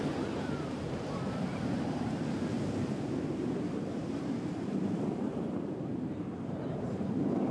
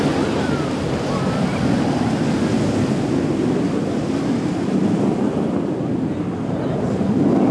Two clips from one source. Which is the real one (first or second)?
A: second